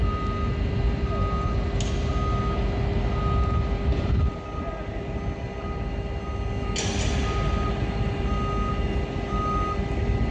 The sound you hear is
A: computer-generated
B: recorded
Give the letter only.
B